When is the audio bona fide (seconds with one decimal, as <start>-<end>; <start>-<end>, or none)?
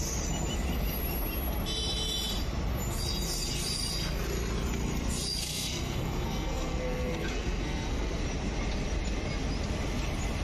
0.0-5.4; 8.2-10.4